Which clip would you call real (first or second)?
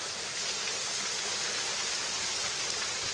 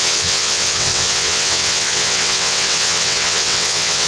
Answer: first